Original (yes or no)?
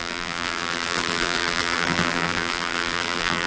no